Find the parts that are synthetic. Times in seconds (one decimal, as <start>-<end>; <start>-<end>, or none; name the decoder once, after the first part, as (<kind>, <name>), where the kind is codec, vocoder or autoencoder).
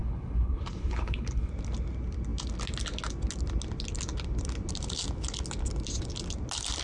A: 0.0-1.5 (codec, HILCodec)